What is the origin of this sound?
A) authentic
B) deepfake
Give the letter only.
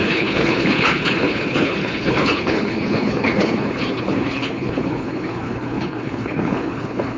B